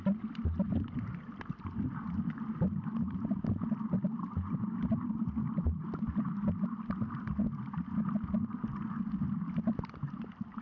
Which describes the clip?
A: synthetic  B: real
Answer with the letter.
B